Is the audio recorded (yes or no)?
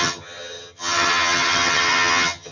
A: no